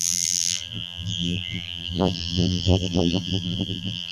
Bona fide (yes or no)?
no